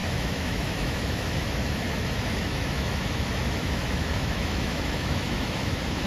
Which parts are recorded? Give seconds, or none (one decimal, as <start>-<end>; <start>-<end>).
none